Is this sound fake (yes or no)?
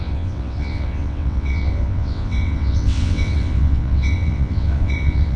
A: yes